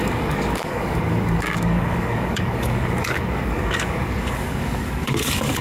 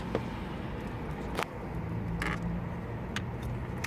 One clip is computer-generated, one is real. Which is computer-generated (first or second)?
first